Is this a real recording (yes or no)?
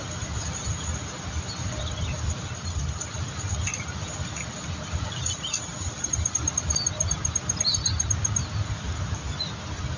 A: yes